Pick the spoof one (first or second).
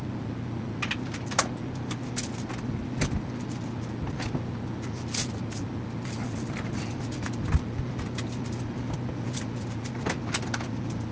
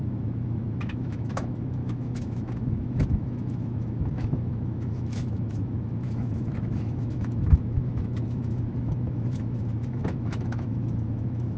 second